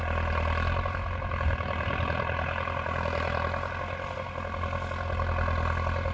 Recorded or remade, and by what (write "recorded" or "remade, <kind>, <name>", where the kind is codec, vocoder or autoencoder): recorded